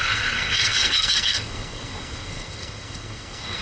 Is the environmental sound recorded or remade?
remade